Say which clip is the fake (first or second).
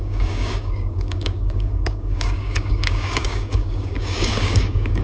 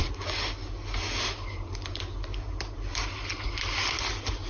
first